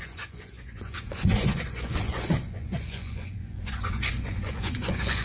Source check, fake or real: fake